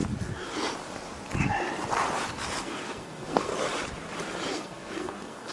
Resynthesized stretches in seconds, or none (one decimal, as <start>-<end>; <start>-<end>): 2.6-3.5; 4.5-5.5